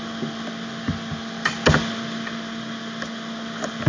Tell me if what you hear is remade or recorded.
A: recorded